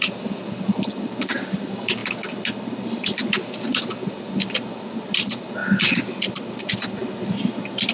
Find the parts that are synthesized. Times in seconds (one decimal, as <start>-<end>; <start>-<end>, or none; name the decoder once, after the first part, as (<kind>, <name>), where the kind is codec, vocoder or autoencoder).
none